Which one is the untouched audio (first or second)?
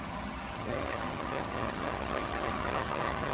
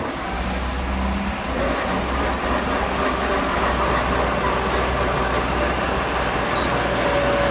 second